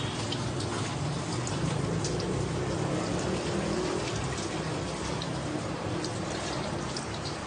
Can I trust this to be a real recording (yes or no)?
no